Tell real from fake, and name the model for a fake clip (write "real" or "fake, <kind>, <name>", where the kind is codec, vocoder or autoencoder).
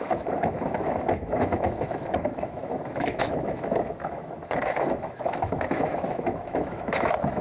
fake, autoencoder, DAC-VAE